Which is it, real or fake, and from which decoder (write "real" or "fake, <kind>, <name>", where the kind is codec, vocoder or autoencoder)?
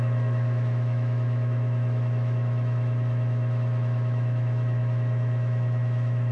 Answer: fake, autoencoder, DAC-VAE